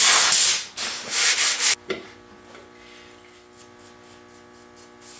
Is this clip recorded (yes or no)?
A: yes